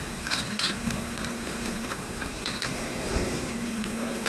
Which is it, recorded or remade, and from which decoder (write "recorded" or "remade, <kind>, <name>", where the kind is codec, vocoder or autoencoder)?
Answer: remade, codec, SNAC